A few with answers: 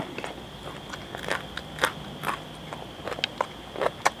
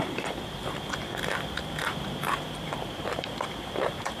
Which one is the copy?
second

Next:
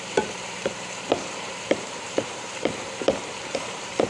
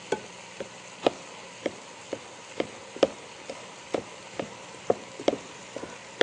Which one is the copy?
first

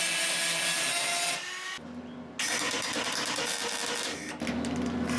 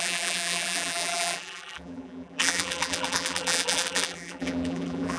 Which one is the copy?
second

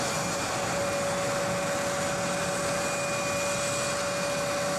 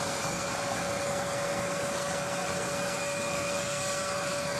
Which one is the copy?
second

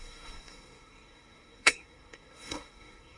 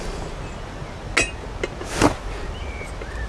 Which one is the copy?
first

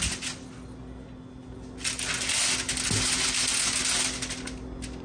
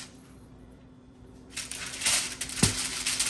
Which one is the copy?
second